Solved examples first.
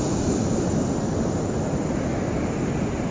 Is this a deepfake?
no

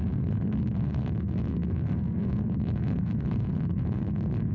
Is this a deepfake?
yes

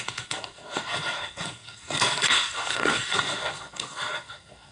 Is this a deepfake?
yes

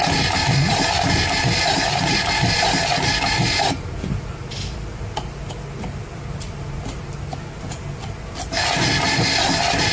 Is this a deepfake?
no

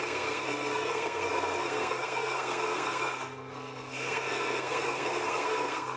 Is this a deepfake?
yes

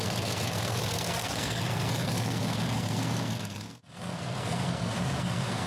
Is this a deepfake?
yes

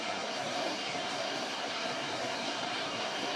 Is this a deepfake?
yes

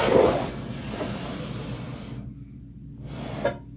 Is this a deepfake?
no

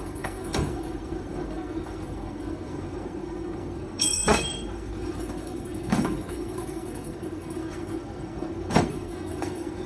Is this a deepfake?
yes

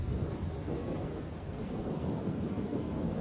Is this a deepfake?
yes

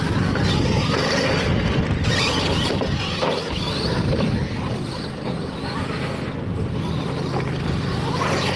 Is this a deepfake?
no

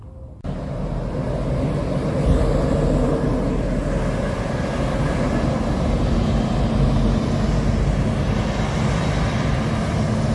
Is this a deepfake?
no